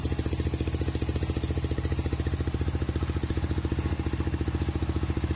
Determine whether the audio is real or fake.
real